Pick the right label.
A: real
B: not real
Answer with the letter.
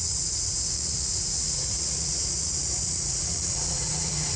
B